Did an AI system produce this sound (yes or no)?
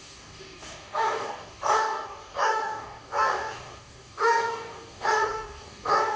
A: yes